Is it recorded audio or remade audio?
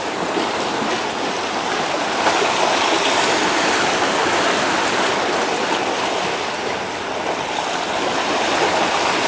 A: recorded